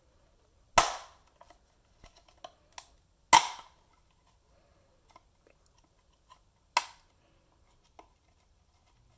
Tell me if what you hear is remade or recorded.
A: recorded